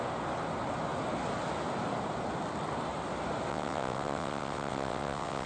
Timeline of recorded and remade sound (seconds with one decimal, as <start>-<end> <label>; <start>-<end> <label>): 0.0-3.5 recorded; 3.5-5.5 remade